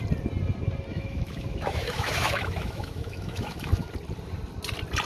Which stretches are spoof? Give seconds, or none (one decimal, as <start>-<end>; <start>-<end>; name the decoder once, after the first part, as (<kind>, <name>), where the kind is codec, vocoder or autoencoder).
0.9-3.9 (autoencoder, DAC-VAE)

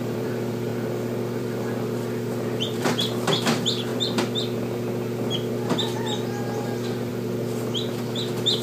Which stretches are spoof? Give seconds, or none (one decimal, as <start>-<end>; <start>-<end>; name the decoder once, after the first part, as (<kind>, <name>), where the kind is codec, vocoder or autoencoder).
0.0-0.7 (vocoder, BigVGAN v2); 1.4-3.9; 5.8-7.1; 7.9-8.6

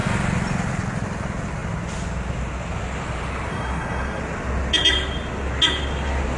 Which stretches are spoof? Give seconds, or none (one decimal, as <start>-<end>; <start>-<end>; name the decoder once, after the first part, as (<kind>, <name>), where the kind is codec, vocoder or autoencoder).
3.5-4.2 (codec, SNAC)

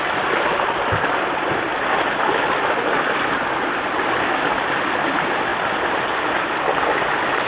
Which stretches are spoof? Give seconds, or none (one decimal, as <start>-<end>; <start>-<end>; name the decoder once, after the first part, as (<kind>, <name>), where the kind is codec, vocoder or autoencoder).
none

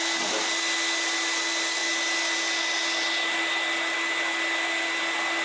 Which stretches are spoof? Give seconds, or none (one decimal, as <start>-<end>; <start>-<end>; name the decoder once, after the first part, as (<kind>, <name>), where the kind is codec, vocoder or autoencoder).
none

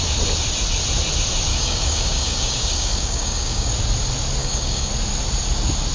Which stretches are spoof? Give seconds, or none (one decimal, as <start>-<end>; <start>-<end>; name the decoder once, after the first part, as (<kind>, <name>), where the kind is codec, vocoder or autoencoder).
1.5-3.7 (codec, DAC); 4.4-4.9